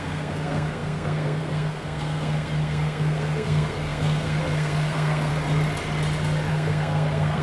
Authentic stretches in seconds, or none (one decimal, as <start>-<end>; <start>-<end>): 5.3-6.5